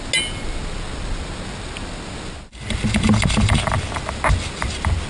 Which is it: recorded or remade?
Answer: recorded